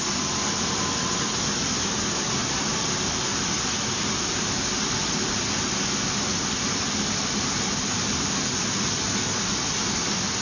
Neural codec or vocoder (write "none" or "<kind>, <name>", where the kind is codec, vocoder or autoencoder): none